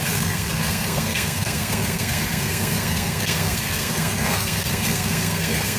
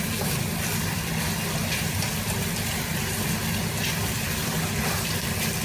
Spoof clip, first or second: first